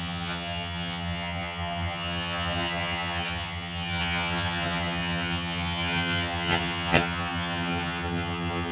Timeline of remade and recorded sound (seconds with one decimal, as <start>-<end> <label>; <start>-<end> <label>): 0.0-8.7 remade